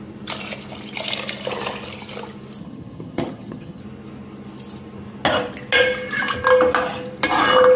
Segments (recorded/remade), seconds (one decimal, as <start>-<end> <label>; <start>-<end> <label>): 0.0-2.6 recorded; 2.6-3.8 remade; 3.8-7.8 recorded